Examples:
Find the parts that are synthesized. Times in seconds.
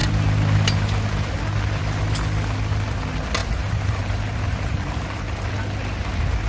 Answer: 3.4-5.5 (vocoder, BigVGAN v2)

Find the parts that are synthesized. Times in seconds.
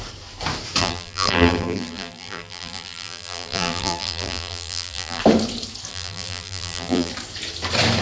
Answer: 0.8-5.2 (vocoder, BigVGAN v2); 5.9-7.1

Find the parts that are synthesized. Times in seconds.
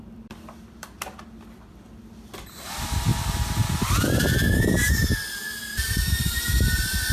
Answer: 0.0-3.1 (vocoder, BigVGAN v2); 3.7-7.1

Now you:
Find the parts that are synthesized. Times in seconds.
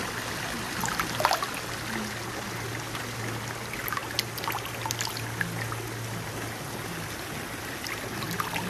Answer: none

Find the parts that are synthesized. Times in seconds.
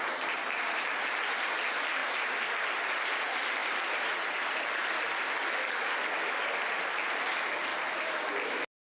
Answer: 7.7-8.2 (vocoder, BigVGAN v2)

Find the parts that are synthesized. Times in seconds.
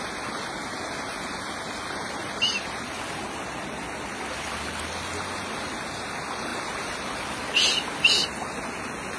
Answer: none